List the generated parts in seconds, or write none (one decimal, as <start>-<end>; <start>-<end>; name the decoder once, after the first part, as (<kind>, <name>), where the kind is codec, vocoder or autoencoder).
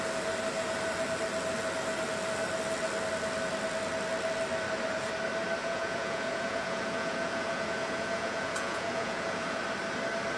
5.6-9.6 (vocoder, Vocos)